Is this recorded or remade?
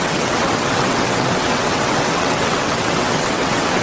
remade